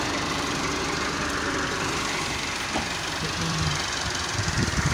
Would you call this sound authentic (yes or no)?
no